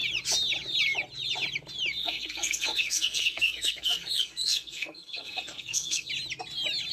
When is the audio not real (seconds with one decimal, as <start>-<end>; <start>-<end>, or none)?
2.0-6.1